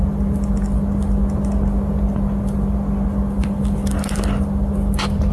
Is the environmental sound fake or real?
real